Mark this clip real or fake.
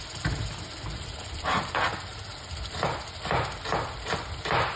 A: real